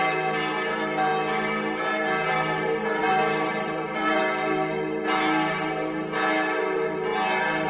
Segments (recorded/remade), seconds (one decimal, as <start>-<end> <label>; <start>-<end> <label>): 0.0-3.0 recorded; 3.0-4.2 remade; 4.2-7.7 recorded